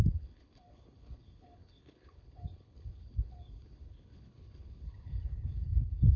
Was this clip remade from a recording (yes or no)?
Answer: yes